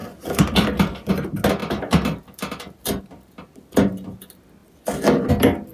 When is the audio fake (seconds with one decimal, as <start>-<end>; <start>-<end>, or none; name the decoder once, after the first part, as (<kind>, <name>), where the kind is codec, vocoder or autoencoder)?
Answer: 0.0-1.1 (vocoder, BigVGAN v2); 1.6-3.0; 4.6-5.7